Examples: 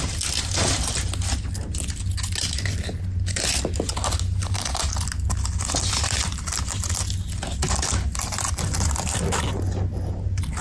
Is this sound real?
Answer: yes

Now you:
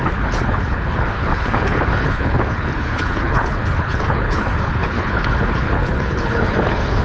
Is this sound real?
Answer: no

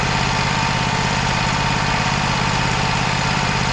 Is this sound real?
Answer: no